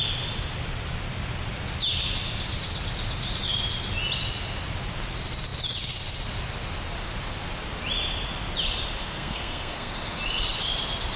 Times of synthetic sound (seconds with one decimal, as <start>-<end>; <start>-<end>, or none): 9.0-9.9